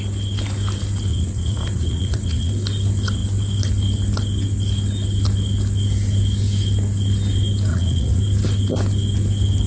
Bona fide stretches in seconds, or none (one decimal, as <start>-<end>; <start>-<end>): 0.0-1.1; 2.5-7.7; 8.2-9.7